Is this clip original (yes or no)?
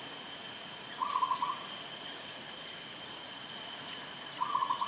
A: no